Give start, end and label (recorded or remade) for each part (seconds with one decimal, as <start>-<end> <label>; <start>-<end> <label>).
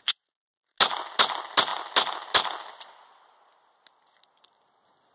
0.0-5.1 recorded